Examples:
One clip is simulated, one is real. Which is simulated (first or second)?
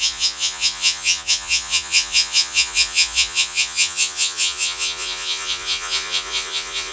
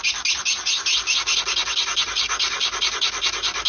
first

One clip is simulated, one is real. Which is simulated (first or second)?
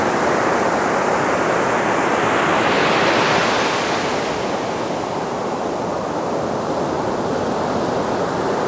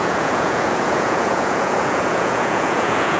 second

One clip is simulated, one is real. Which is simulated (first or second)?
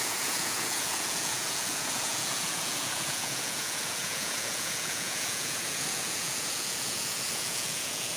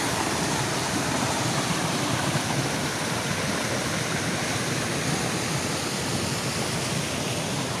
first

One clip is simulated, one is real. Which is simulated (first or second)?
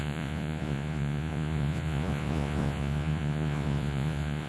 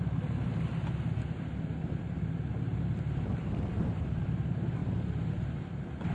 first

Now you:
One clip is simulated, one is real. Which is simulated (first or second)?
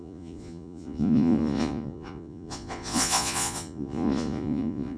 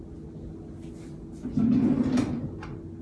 first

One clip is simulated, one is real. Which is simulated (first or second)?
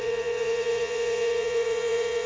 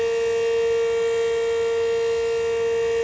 first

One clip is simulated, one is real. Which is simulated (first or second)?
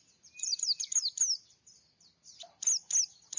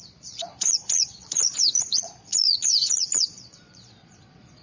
second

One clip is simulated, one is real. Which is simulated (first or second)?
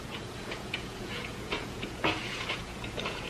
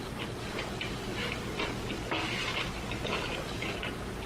first